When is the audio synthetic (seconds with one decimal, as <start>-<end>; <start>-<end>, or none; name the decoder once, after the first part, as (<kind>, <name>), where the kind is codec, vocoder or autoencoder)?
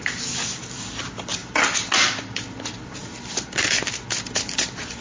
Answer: none